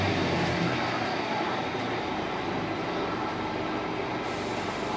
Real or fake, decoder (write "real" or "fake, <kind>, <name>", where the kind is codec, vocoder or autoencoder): real